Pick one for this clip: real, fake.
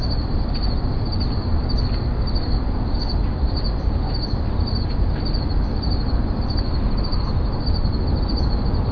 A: real